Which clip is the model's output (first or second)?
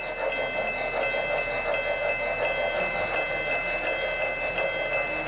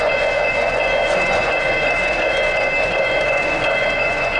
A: second